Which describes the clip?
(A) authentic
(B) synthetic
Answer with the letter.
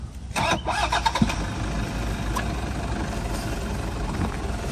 A